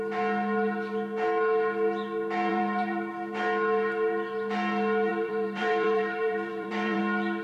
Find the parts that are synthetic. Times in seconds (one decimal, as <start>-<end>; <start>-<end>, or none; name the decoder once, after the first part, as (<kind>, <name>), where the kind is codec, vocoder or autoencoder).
2.5-3.1 (vocoder, BigVGAN v2); 5.1-7.0